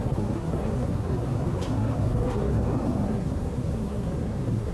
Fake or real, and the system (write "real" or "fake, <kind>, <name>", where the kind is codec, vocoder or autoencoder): fake, codec, SNAC